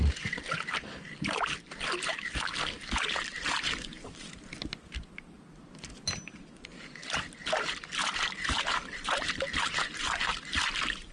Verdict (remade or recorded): recorded